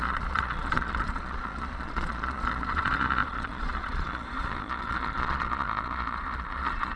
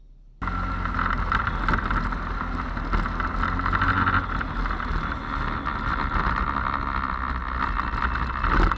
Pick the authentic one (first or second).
second